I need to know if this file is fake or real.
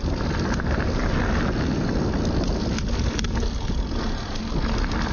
real